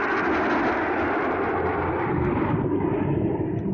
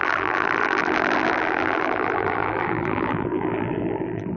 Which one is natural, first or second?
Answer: first